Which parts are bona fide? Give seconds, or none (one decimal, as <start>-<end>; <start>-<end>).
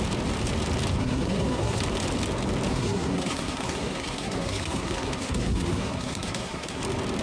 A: 0.0-1.0; 1.8-2.7; 6.8-7.2